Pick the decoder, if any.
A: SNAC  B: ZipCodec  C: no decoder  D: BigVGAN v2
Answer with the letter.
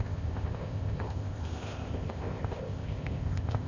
B